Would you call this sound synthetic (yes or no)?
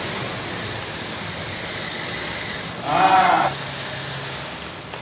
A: no